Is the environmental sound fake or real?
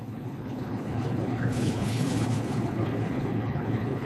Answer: fake